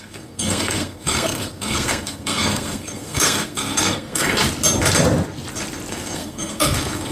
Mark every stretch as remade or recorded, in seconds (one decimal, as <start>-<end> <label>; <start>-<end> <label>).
0.0-4.4 remade; 4.4-5.9 recorded; 5.9-7.1 remade